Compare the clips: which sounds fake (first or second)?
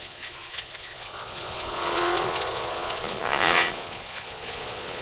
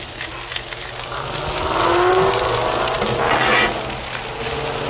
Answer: first